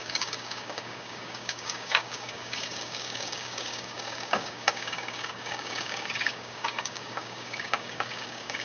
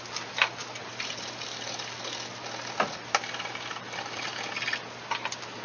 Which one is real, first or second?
second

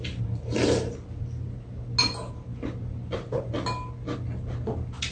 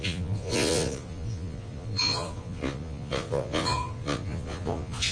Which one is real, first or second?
first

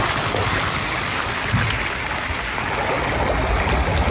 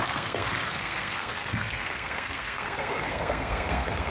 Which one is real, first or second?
first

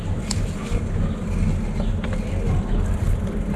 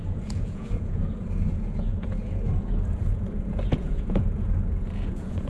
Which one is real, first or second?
first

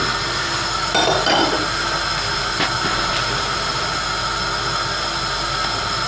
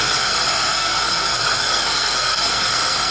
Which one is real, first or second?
first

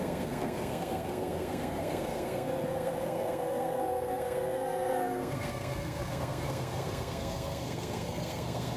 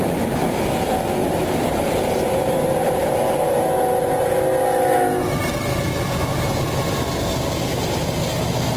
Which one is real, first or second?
second